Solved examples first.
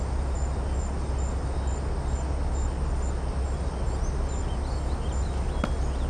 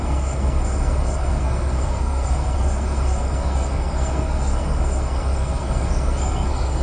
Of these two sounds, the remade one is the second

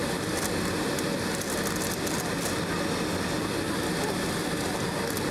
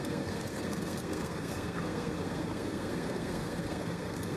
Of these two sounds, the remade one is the second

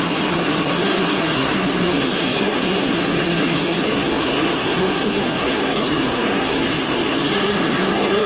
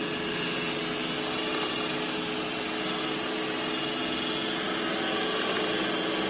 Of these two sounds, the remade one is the first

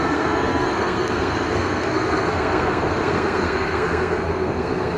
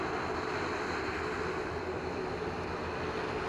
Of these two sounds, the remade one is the first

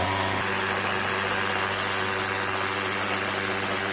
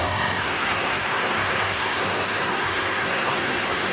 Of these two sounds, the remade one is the second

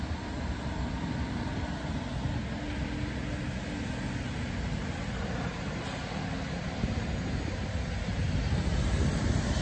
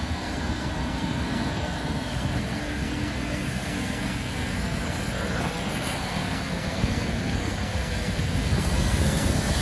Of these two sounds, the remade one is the second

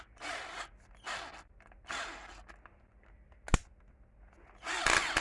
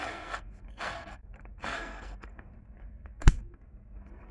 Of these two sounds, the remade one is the second